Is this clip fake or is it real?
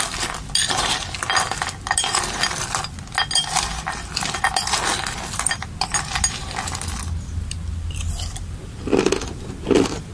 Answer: real